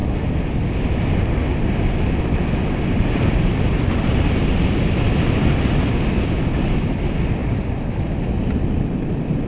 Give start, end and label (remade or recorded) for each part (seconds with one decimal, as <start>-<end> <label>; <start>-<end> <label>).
0.0-9.5 recorded